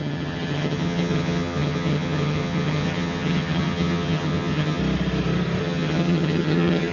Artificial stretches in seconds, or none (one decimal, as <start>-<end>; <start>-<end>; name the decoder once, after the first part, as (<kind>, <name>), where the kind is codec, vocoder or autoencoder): 0.0-4.8 (vocoder, HiFi-GAN); 5.6-6.9